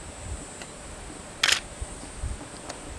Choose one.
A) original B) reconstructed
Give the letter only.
A